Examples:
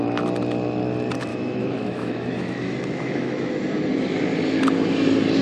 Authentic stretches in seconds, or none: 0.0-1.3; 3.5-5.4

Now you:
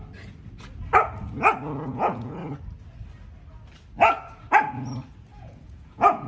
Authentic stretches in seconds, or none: 0.0-1.9; 2.4-5.3

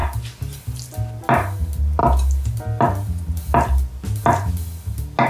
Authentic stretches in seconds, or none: 0.0-5.3

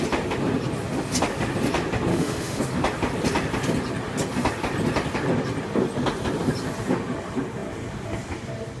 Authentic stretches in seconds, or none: 0.0-2.1; 2.6-8.8

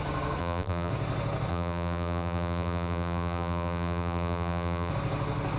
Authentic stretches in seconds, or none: 0.0-0.4; 0.9-1.5; 4.9-5.6